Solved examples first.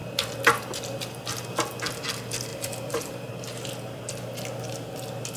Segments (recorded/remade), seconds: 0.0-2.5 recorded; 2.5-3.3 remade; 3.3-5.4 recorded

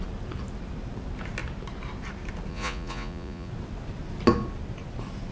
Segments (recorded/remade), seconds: 0.0-2.5 recorded; 2.5-3.5 remade; 3.5-5.3 recorded

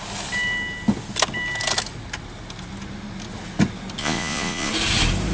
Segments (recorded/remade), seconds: 0.0-4.0 recorded; 4.0-4.7 remade; 4.7-5.3 recorded